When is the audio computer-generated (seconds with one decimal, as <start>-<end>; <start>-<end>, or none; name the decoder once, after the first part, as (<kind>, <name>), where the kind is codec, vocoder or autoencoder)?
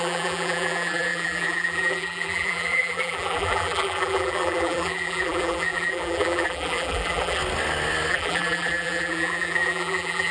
0.0-7.4 (vocoder, BigVGAN v2); 8.1-10.3